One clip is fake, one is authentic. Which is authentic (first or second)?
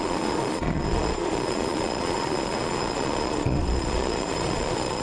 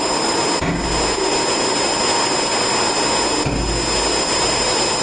second